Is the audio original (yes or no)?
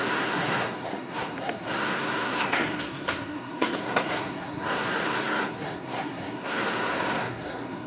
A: no